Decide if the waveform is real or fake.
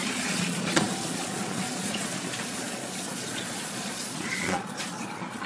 fake